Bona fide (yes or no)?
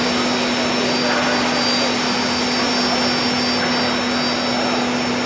yes